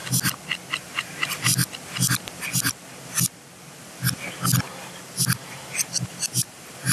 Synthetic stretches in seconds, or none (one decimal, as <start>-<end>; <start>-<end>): 0.7-1.5; 5.4-6.9